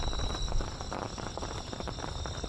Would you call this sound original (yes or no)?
yes